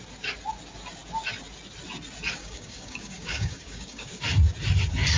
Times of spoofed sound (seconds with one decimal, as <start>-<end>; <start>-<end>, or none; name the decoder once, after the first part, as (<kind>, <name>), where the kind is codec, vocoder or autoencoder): 2.4-4.2 (codec, DAC)